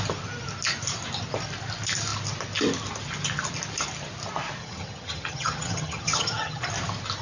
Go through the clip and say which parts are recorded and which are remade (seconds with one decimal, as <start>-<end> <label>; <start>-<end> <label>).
0.0-4.6 recorded; 4.6-6.7 remade; 6.7-7.2 recorded